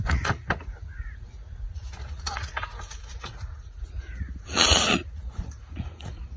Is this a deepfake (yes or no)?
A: yes